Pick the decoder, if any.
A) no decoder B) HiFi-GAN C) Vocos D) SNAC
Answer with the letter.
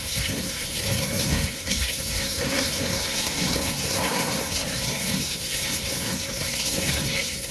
D